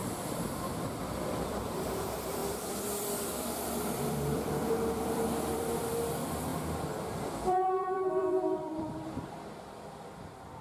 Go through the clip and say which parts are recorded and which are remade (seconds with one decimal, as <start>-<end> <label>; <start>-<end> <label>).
0.0-1.0 recorded; 1.0-10.6 remade